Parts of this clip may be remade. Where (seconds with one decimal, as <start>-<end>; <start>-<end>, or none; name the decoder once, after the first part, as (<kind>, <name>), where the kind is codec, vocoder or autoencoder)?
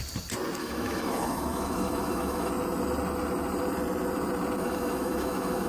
0.6-2.5 (autoencoder, DAC-VAE); 4.6-5.7